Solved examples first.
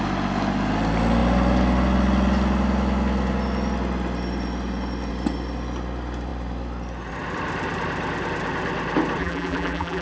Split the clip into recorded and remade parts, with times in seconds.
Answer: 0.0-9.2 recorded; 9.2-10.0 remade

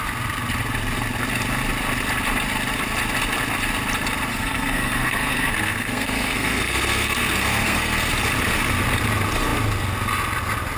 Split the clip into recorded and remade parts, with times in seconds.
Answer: 0.0-4.3 recorded; 4.3-8.1 remade; 8.1-10.8 recorded

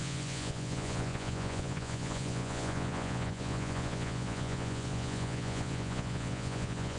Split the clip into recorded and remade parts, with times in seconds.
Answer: 0.0-7.0 remade

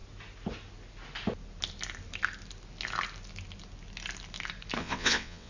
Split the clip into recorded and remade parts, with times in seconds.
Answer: 0.0-4.8 recorded; 4.8-5.5 remade

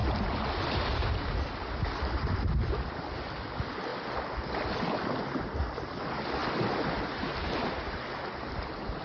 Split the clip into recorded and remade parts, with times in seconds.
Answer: 0.0-9.0 recorded

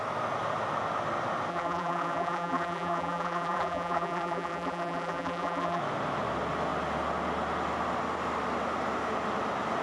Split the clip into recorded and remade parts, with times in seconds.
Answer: 0.0-1.5 recorded; 1.5-5.8 remade; 5.8-9.8 recorded